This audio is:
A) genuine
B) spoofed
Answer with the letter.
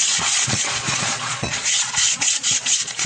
B